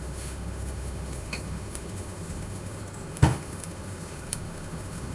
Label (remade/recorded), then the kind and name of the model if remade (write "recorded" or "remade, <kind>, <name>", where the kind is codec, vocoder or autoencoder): remade, autoencoder, DAC-VAE